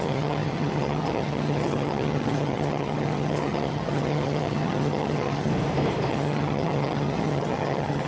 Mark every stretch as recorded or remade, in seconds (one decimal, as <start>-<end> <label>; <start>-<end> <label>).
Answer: 0.0-5.5 remade; 5.5-6.1 recorded; 6.1-8.1 remade